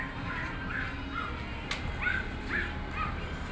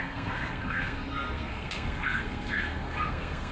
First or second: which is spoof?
second